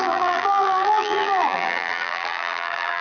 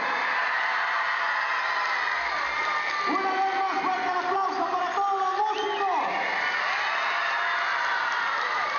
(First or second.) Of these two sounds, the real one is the second